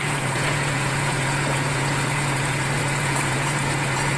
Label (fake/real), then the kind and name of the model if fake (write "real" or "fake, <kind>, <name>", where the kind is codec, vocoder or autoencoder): fake, vocoder, Vocos